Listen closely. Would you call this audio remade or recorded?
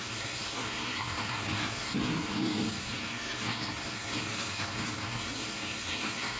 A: remade